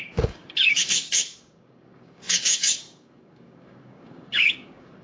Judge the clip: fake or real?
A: fake